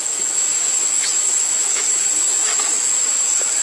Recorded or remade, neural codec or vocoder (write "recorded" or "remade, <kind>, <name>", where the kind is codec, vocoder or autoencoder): remade, autoencoder, DAC-VAE